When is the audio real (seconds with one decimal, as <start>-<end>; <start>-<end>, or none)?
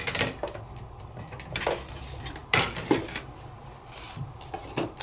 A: 0.0-5.0